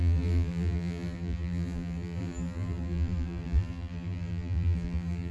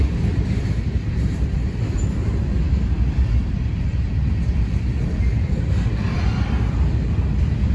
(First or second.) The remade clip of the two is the first